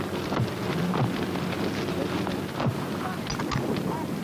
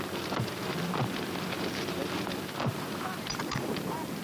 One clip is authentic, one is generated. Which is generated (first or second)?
second